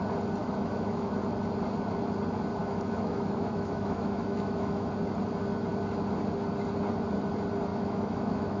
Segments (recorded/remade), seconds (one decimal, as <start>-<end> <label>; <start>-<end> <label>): 0.0-0.4 recorded; 0.4-1.1 remade; 1.1-2.6 recorded; 2.6-4.9 remade; 4.9-7.7 recorded; 7.7-8.6 remade